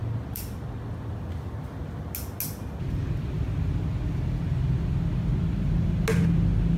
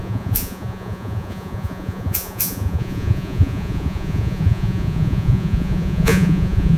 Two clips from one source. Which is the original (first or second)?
first